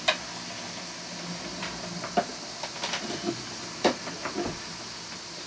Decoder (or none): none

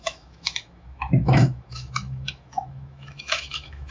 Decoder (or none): autoencoder, DAC-VAE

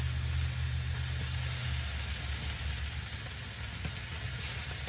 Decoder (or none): none